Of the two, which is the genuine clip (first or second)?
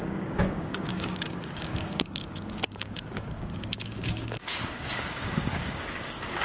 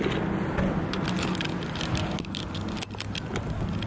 second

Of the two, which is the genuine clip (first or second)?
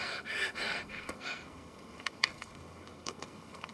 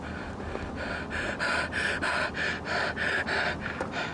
second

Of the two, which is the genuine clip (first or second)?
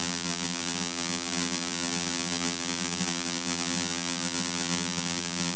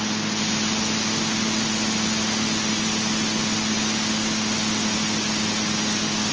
second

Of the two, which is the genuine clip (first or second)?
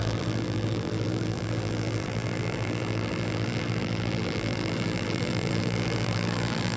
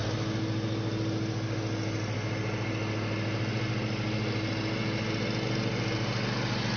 second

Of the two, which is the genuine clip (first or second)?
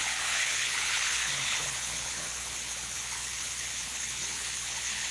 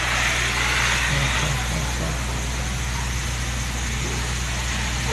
second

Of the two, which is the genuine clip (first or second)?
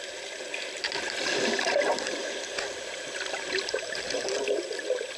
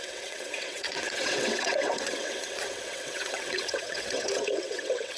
first